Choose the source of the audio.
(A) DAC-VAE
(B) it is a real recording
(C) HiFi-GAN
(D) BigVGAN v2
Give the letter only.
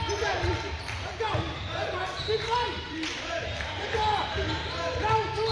D